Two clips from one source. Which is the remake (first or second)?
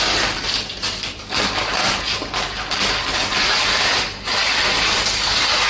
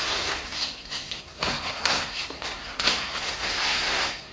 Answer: second